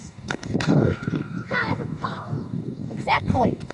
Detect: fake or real fake